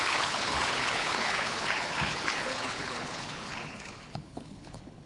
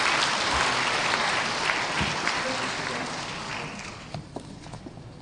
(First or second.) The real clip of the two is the second